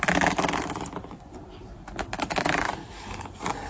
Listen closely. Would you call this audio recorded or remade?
recorded